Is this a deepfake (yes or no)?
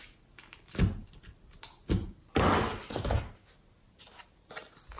no